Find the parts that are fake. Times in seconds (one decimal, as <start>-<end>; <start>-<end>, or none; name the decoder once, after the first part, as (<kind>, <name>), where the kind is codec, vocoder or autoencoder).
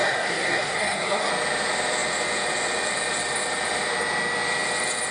0.0-1.3 (codec, SNAC)